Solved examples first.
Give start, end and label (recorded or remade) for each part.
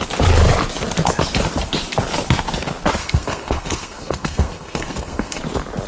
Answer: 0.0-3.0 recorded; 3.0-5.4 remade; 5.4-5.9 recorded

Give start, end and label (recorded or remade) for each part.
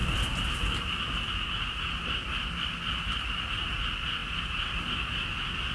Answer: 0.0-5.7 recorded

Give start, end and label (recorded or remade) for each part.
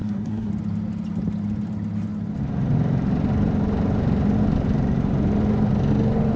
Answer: 0.0-0.5 remade; 0.5-6.4 recorded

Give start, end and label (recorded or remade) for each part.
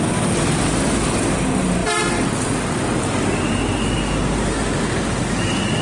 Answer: 0.0-5.8 recorded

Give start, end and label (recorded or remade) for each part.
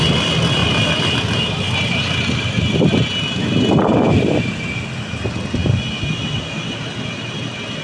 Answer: 0.0-7.8 recorded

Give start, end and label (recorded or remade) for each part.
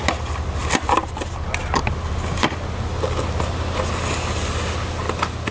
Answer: 0.0-5.5 recorded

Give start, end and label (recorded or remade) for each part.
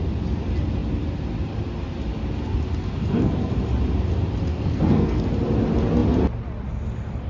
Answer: 0.0-3.0 recorded; 3.0-3.5 remade; 3.5-4.5 recorded; 4.5-5.3 remade; 5.3-7.3 recorded